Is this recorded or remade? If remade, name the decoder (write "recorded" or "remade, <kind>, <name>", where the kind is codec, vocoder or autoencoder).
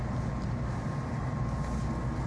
recorded